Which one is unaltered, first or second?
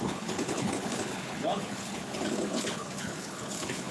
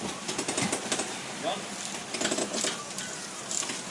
second